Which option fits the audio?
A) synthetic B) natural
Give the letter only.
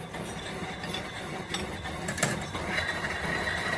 B